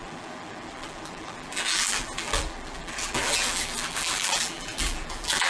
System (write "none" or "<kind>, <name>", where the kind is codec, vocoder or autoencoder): vocoder, BigVGAN v2